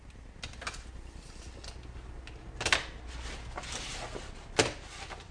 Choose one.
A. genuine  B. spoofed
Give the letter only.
A